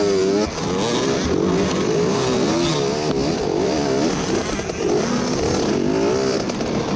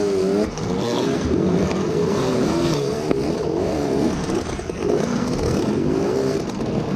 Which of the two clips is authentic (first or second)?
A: first